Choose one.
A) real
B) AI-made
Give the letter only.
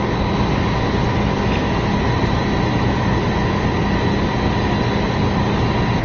A